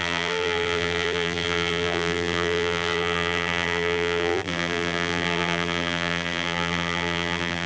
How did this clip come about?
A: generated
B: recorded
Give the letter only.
A